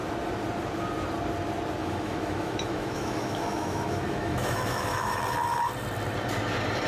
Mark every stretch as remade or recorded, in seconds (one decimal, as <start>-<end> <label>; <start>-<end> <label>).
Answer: 0.0-1.8 recorded; 1.8-5.2 remade; 5.2-6.9 recorded